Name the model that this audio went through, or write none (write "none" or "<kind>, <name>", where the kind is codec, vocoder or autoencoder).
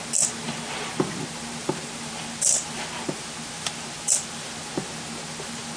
none